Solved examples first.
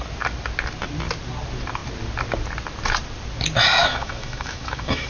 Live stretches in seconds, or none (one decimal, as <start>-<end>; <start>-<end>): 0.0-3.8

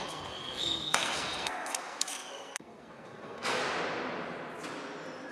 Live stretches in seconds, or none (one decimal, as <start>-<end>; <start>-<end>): 3.6-5.3

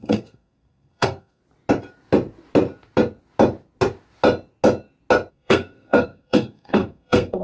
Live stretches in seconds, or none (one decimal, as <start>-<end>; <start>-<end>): 1.4-5.3

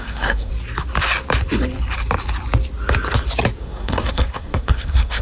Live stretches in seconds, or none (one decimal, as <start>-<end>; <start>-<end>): 0.5-3.6

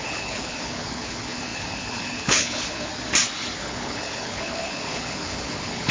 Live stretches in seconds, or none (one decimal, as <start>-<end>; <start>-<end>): 2.9-3.6

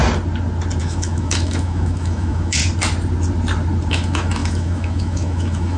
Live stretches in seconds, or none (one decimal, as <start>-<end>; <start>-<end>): 0.0-0.8; 2.6-3.9